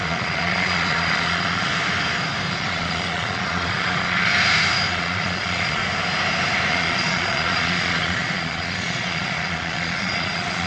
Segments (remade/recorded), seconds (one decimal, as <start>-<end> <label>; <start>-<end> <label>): 0.0-1.7 remade; 1.7-2.5 recorded; 2.5-4.3 remade; 4.3-4.9 recorded; 4.9-5.8 remade; 5.8-6.7 recorded; 6.7-10.7 remade